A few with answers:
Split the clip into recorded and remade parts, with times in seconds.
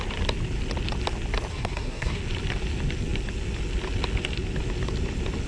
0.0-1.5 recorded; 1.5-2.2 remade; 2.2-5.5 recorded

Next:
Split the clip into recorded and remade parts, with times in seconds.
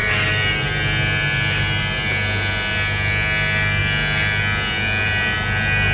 0.0-5.9 recorded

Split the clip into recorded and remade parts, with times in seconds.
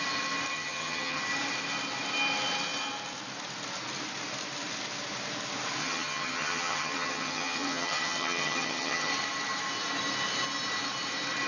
0.0-0.5 recorded; 0.5-1.2 remade; 1.2-5.8 recorded; 5.8-9.1 remade; 9.1-11.5 recorded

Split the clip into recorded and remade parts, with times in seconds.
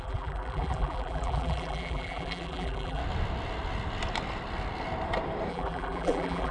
0.0-3.0 remade; 3.0-5.5 recorded; 5.5-6.5 remade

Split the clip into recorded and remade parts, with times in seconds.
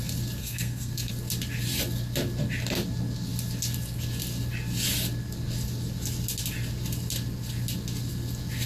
0.0-0.4 recorded; 0.4-1.1 remade; 1.1-8.7 recorded